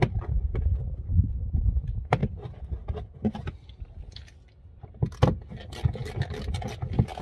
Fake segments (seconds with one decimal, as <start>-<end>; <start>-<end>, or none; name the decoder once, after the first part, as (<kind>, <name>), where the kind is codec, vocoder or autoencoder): none